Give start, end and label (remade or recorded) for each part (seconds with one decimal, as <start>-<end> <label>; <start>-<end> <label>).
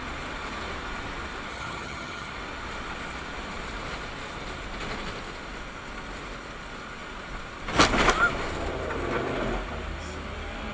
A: 0.0-1.5 recorded; 1.5-2.3 remade; 2.3-10.7 recorded